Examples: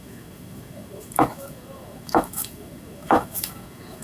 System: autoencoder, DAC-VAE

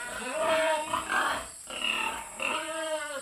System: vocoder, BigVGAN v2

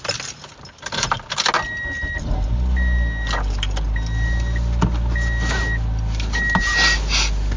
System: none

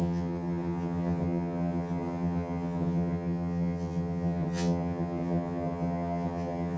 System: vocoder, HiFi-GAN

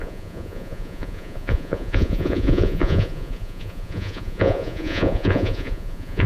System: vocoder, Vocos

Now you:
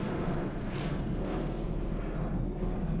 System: codec, SNAC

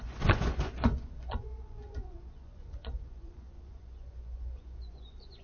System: vocoder, Vocos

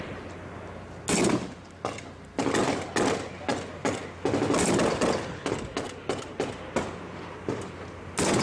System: none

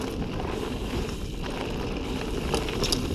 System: none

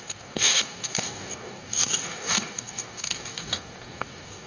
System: codec, DAC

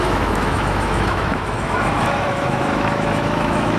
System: autoencoder, DAC-VAE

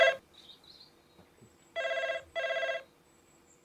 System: none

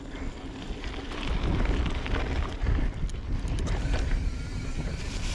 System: none